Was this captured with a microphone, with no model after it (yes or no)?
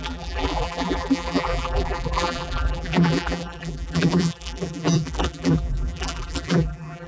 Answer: no